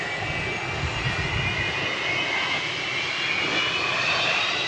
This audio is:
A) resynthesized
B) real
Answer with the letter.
B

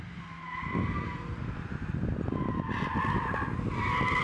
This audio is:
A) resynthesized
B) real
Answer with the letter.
B